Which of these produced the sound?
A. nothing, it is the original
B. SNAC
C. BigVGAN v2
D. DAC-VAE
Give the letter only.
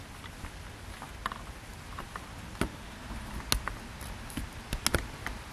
A